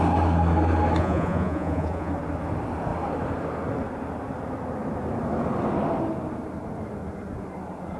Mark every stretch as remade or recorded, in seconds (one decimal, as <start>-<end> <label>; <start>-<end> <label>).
0.0-1.0 recorded; 1.0-2.1 remade; 2.1-8.0 recorded